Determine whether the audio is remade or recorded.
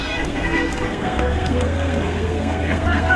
remade